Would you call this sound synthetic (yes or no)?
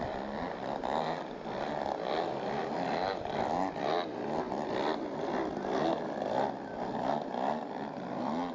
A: no